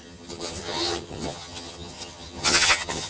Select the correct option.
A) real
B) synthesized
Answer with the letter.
B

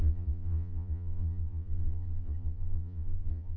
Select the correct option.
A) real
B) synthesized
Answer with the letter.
B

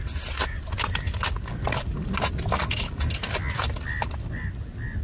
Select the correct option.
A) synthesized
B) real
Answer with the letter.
B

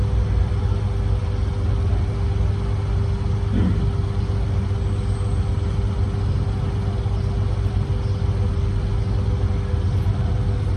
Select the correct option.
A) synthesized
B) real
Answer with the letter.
B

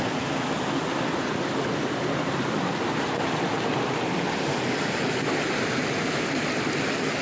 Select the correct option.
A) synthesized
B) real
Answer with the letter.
B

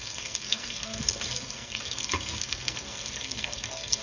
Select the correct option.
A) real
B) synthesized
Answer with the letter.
B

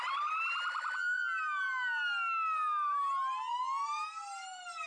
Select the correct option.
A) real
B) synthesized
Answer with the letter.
A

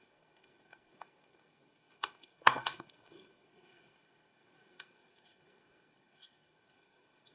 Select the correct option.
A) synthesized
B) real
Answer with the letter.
A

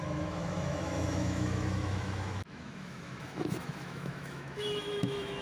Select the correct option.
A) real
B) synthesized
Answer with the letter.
B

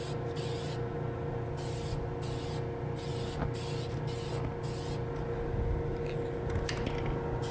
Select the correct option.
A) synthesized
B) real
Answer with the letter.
B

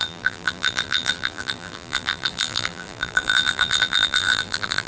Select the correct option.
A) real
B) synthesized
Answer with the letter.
B